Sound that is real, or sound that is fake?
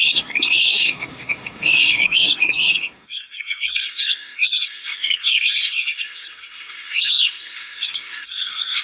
fake